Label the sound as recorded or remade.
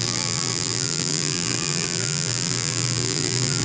remade